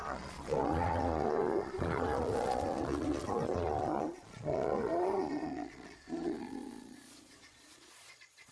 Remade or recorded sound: remade